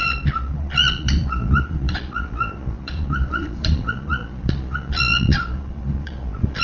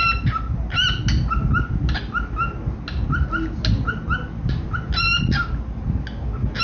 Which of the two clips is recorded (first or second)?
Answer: second